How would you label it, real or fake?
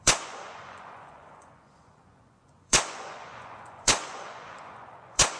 fake